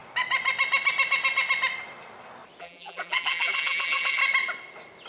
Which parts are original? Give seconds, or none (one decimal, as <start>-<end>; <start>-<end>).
0.0-2.6; 4.2-5.1